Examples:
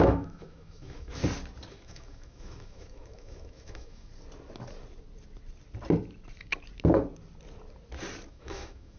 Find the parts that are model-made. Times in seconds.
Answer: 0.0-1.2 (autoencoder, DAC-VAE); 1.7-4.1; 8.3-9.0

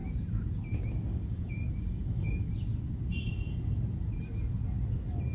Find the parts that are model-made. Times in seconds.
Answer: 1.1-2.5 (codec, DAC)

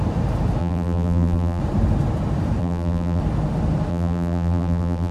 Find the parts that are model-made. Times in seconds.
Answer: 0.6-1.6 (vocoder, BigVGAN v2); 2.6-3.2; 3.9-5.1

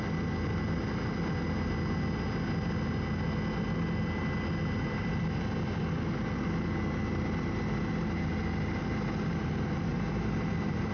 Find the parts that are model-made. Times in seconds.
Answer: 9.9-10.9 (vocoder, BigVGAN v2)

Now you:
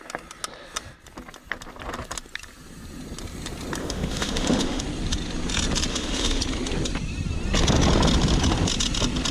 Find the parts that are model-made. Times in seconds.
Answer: 3.8-4.8 (autoencoder, DAC-VAE); 5.9-6.4

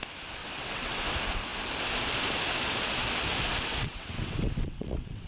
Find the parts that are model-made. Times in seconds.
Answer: 0.4-1.0 (vocoder, WaveNeXt); 3.7-5.3

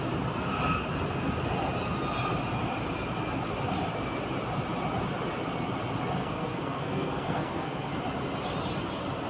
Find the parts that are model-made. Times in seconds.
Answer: 6.2-7.9 (codec, SNAC)

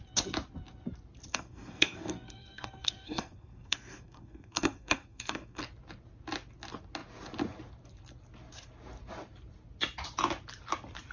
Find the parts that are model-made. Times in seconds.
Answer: 1.3-5.6 (codec, SNAC)